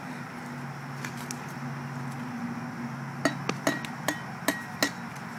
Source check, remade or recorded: recorded